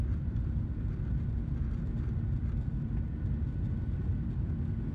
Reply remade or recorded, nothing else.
recorded